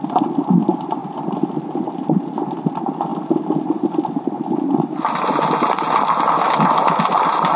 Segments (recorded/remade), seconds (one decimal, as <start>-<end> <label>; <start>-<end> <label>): 0.0-7.6 recorded